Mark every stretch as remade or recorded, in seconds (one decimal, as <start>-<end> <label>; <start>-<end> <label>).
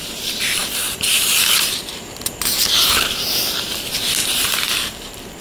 0.0-0.6 recorded; 0.6-3.8 remade; 3.8-4.2 recorded; 4.2-5.4 remade